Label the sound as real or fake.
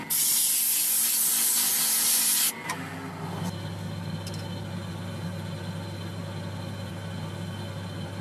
real